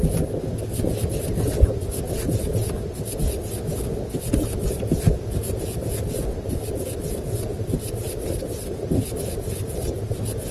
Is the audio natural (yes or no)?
yes